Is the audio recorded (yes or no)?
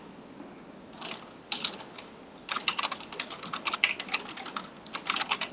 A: yes